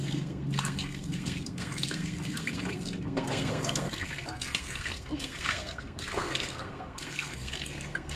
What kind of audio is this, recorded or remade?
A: remade